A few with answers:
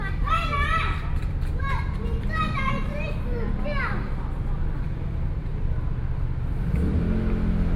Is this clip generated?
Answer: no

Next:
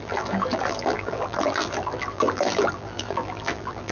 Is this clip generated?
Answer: yes